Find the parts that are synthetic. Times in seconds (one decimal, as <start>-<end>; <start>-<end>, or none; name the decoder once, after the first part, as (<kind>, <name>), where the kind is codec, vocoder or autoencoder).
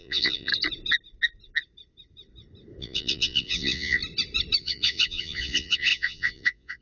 0.0-0.5 (vocoder, Vocos); 2.8-4.0; 4.6-6.8